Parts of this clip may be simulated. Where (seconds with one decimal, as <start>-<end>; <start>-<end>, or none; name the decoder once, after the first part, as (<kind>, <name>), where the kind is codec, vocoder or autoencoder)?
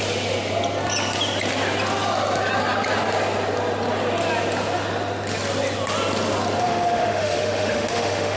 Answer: 6.6-8.4 (autoencoder, DAC-VAE)